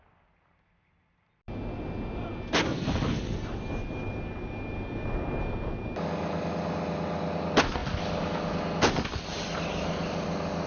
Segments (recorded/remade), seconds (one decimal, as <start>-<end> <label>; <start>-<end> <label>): 0.0-10.7 recorded